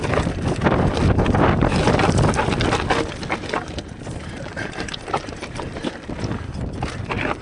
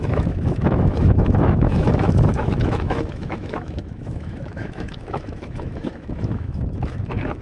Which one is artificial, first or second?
second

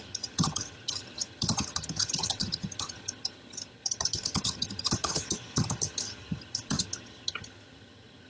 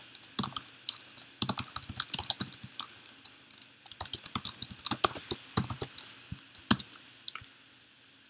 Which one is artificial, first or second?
first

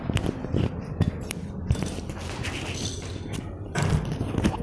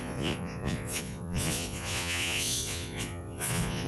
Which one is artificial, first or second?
second